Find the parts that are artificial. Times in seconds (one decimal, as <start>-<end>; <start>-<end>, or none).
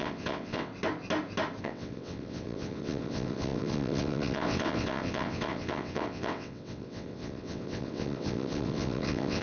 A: 0.0-0.7; 1.6-9.4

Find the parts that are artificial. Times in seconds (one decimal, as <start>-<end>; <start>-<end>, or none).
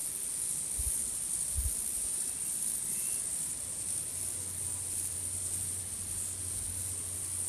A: none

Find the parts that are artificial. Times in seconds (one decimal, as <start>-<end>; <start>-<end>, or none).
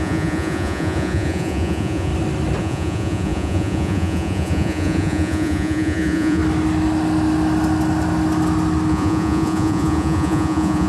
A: 0.0-2.1; 2.6-6.4; 8.9-10.9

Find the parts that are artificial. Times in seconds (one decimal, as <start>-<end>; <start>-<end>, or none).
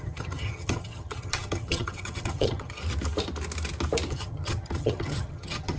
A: 0.0-2.8; 4.1-5.8